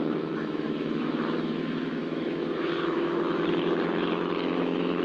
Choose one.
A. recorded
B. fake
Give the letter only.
B